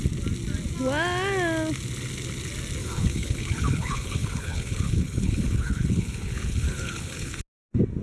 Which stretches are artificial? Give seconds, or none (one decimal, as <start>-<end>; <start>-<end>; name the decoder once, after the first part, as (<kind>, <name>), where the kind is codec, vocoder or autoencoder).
2.8-7.4 (codec, HILCodec)

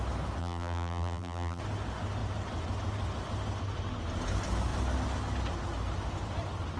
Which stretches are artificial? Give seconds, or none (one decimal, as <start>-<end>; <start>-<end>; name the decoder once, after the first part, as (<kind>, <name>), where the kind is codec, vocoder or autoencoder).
0.4-1.6 (vocoder, BigVGAN v2)

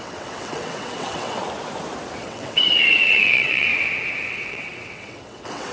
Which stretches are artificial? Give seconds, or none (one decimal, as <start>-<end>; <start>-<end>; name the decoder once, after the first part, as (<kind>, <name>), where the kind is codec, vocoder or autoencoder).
0.0-1.4 (vocoder, WaveNeXt); 2.2-3.7; 4.3-5.7

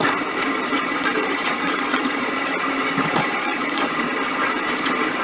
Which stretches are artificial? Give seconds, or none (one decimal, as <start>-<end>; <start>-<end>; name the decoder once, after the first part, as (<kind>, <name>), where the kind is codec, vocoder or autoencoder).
0.9-2.3 (vocoder, Vocos); 3.2-3.9

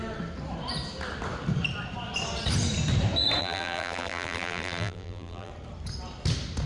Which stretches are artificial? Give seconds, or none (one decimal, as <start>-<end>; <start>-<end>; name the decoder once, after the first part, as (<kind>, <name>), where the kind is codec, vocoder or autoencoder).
3.4-5.5 (vocoder, BigVGAN v2)

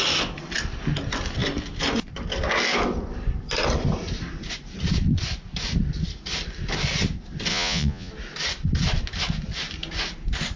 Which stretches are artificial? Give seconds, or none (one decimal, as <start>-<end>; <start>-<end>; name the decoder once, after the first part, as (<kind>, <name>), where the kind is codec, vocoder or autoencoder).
7.5-8.1 (vocoder, Vocos)

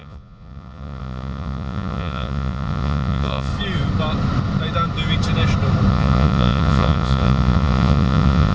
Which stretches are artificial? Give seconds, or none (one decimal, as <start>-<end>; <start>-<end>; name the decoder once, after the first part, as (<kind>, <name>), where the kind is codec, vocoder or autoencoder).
0.0-3.5 (vocoder, Vocos); 5.9-8.5

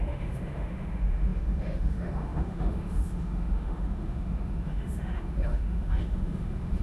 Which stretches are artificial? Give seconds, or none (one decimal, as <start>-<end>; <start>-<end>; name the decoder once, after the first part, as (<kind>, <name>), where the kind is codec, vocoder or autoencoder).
0.0-6.8 (autoencoder, DAC-VAE)